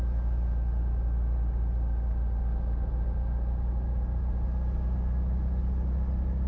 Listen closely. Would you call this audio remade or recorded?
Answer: recorded